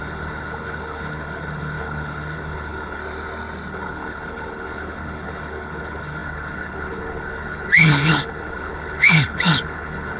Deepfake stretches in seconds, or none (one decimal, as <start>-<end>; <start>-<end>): 0.0-3.0; 3.7-10.2